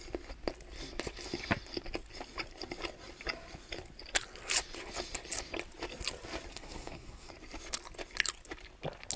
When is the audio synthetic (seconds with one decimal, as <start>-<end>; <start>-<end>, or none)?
6.5-7.3